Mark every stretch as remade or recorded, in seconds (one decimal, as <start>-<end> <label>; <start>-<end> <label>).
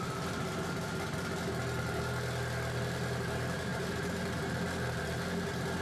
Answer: 0.0-3.7 recorded; 3.7-4.4 remade; 4.4-5.8 recorded